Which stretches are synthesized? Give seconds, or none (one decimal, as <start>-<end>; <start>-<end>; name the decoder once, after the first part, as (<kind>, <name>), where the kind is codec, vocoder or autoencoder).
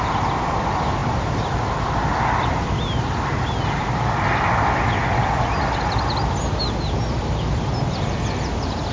none